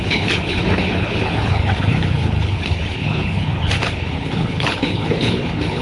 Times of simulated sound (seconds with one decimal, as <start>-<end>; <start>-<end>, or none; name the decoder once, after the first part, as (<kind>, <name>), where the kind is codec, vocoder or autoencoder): 0.0-5.8 (codec, HILCodec)